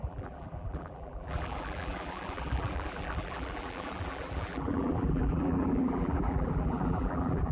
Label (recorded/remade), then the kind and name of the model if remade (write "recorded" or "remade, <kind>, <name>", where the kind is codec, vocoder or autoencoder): remade, vocoder, BigVGAN v2